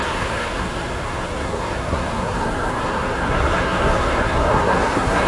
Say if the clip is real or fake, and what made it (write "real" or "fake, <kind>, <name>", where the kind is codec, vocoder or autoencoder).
fake, codec, SNAC